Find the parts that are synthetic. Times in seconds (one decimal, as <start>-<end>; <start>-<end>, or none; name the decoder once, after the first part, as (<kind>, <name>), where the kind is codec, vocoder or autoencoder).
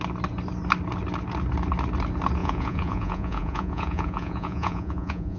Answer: 2.4-5.4 (vocoder, Vocos)